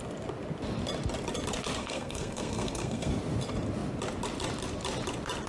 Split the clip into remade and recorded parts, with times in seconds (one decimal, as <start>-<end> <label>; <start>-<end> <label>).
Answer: 0.0-1.8 recorded; 1.8-3.1 remade; 3.1-5.5 recorded

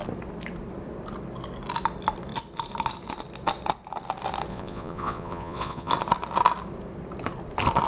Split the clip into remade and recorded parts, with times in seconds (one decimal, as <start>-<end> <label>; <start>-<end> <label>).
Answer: 0.0-4.5 recorded; 4.5-5.9 remade; 5.9-7.9 recorded